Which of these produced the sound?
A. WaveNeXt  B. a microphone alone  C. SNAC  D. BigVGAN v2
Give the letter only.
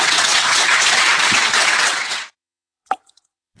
A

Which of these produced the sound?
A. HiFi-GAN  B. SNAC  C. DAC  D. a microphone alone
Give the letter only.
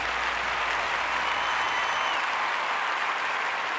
D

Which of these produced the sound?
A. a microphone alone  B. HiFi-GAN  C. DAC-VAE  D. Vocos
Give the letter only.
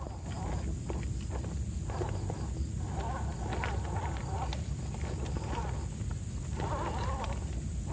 A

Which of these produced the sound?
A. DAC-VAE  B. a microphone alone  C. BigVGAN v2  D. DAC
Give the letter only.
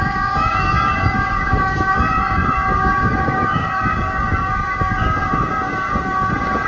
D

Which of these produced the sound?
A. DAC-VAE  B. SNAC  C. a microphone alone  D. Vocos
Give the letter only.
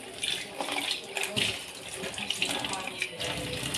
C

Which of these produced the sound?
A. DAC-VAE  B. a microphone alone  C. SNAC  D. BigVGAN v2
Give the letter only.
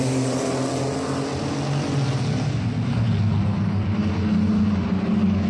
B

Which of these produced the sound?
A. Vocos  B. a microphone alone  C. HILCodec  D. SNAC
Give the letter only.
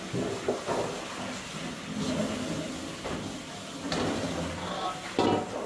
B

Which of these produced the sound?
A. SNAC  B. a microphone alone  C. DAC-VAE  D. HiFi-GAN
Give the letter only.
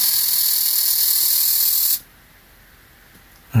B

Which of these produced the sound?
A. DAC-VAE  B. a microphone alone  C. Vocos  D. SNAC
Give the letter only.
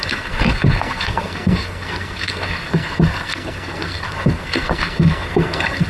D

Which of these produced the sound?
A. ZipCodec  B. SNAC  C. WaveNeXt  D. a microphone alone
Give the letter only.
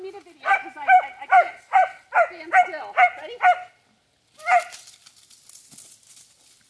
D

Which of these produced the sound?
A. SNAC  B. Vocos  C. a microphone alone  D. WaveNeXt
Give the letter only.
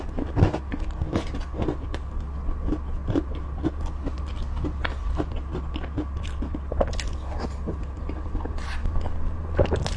C